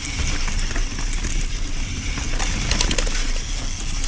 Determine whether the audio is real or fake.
real